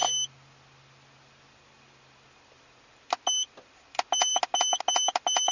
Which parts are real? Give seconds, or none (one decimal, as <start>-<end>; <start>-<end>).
0.0-5.5

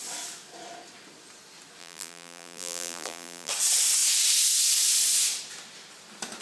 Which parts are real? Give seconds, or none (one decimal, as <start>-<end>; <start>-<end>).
0.0-1.8; 3.5-6.4

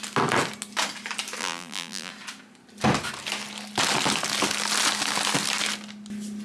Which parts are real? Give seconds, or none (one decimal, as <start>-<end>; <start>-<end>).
0.0-1.4; 2.1-6.4